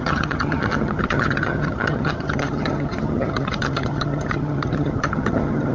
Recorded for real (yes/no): no